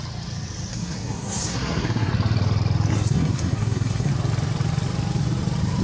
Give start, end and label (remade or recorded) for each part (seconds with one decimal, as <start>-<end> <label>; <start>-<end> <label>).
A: 0.0-0.7 recorded; 0.7-2.1 remade; 2.1-2.9 recorded; 2.9-4.1 remade; 4.1-5.8 recorded